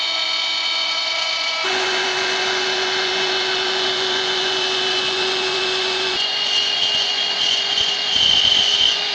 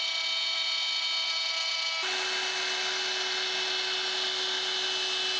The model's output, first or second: first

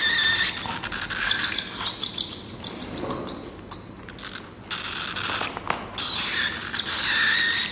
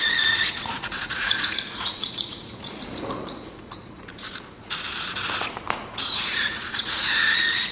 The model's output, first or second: second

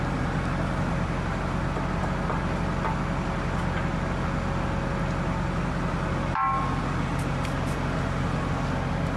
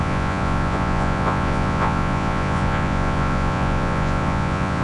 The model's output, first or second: second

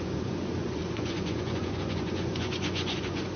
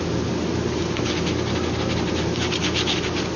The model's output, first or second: first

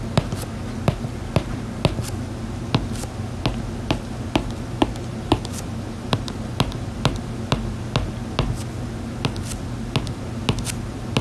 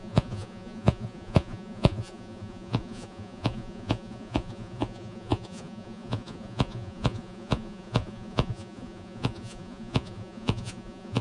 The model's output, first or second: second